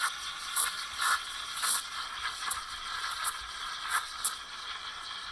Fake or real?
real